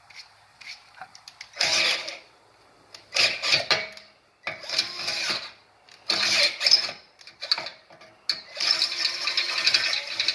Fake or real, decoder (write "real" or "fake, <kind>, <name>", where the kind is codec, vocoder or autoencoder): real